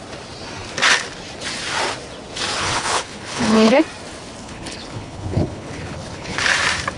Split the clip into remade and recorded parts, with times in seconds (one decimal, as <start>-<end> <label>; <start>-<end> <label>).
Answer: 0.0-2.6 recorded; 2.6-3.8 remade; 3.8-4.4 recorded; 4.4-6.4 remade; 6.4-7.0 recorded